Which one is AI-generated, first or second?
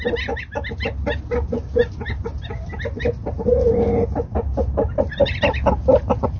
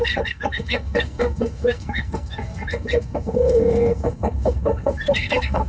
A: second